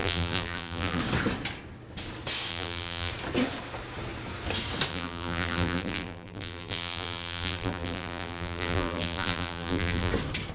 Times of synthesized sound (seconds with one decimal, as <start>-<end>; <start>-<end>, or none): 0.0-1.0; 2.5-3.1; 4.9-10.1